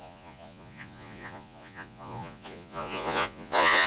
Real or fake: fake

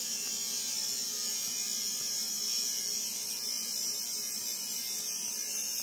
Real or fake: real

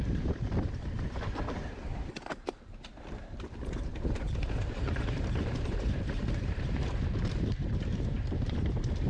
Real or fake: fake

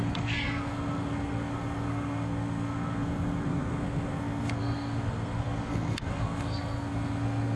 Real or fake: fake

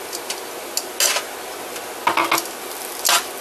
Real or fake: real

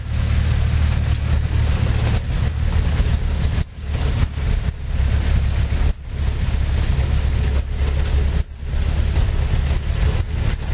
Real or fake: real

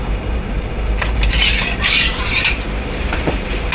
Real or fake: fake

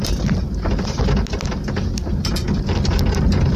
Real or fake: real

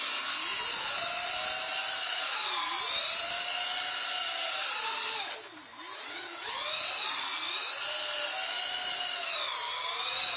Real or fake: real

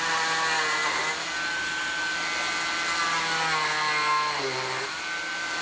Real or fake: real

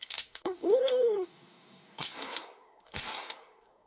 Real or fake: fake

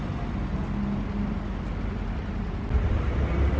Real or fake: real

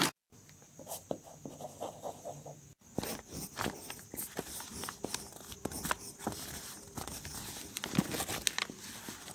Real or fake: real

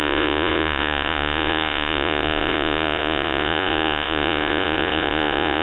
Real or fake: fake